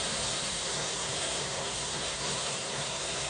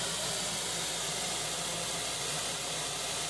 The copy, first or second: first